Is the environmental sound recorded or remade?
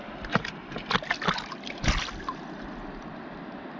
recorded